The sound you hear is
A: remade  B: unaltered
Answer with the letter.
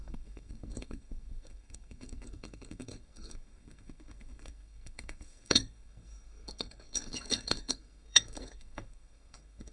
A